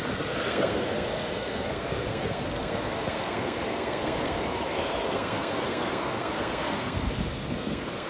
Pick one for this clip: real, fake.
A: fake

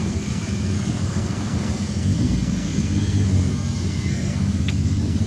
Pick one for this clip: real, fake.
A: fake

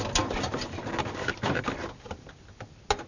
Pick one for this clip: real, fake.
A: real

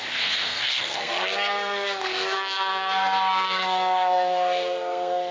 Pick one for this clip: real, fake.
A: fake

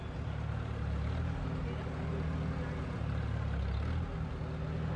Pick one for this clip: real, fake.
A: real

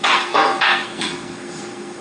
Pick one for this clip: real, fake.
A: fake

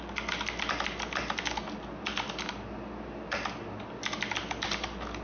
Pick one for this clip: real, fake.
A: real